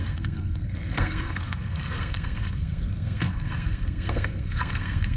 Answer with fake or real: fake